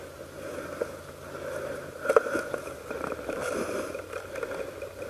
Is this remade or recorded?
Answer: recorded